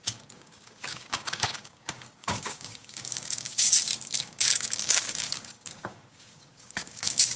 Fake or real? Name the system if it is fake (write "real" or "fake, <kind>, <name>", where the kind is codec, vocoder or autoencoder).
fake, codec, DAC